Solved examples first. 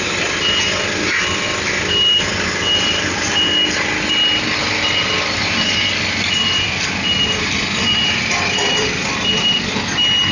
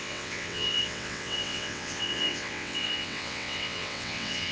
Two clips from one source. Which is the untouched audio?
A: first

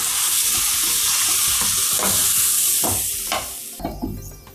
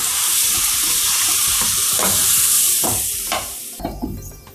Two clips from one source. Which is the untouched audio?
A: first